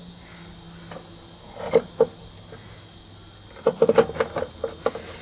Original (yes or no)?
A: yes